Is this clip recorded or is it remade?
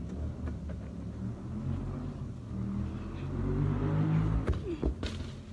recorded